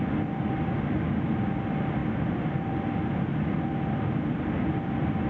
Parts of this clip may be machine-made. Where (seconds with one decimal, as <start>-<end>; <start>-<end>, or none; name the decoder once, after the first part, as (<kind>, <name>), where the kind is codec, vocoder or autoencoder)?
none